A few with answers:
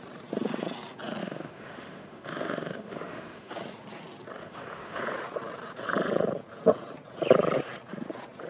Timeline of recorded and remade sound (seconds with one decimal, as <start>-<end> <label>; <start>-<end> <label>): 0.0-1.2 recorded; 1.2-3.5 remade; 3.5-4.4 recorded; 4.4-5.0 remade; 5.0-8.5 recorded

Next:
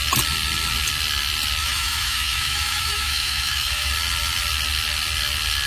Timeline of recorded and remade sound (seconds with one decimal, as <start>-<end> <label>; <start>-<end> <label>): 0.0-1.6 recorded; 1.6-3.9 remade; 3.9-5.7 recorded

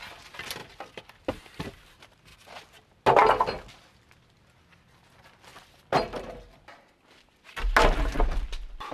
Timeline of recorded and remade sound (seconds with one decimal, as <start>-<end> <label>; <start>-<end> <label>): 0.0-8.9 recorded

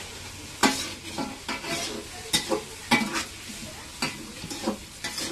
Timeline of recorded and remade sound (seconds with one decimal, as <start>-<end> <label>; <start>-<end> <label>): 0.0-5.3 recorded